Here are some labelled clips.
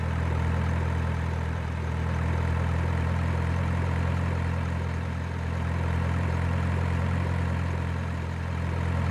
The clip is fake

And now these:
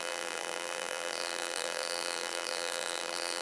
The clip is fake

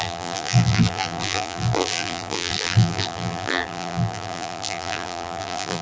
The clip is fake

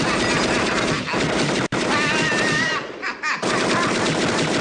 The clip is fake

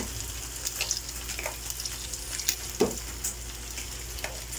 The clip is real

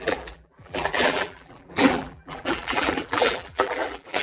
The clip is fake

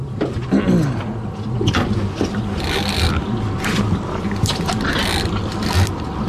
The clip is real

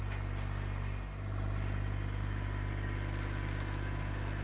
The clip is real